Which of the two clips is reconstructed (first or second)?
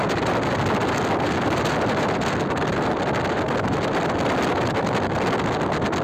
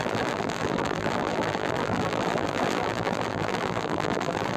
second